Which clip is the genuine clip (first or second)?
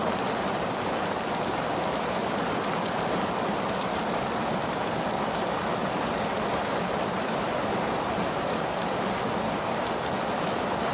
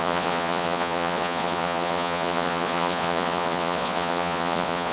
first